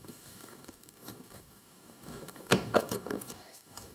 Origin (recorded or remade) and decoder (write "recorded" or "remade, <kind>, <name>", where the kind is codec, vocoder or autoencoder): remade, codec, DAC